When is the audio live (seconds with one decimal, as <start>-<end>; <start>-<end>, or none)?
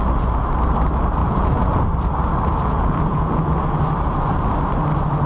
0.0-1.2; 1.8-2.5; 3.5-5.3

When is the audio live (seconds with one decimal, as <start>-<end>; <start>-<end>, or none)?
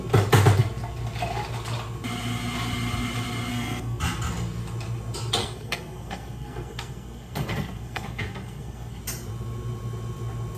0.0-3.5; 4.0-5.4; 9.0-10.6